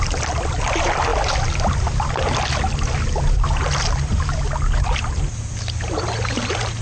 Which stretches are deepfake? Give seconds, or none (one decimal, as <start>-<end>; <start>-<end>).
none